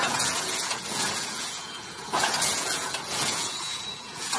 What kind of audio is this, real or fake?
fake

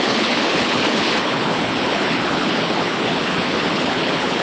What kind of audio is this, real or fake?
fake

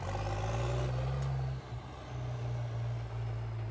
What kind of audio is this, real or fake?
real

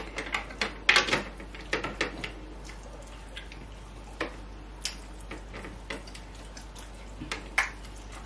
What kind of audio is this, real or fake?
real